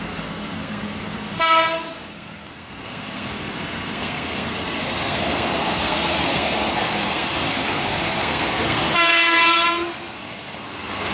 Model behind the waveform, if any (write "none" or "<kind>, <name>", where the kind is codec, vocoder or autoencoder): codec, SNAC